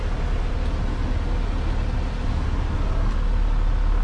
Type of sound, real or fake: real